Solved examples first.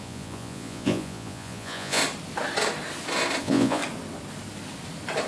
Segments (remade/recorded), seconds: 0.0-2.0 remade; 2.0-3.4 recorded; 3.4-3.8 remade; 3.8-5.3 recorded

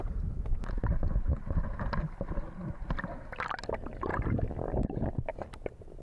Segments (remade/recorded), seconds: 0.0-6.0 recorded

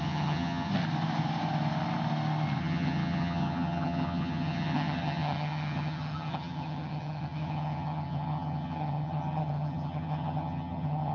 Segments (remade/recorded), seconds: 0.0-0.7 remade; 0.7-2.6 recorded; 2.6-11.1 remade

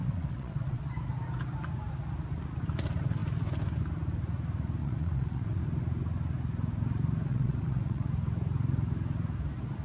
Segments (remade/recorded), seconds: 0.0-0.9 remade; 0.9-4.8 recorded; 4.8-5.6 remade; 5.6-7.3 recorded; 7.3-8.1 remade; 8.1-9.8 recorded

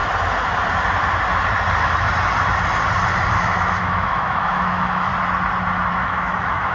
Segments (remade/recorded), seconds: 0.0-3.3 recorded; 3.3-5.1 remade; 5.1-5.9 recorded; 5.9-6.7 remade

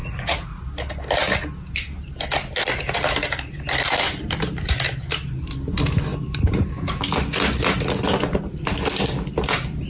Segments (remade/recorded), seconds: 0.0-0.6 remade; 0.6-9.9 recorded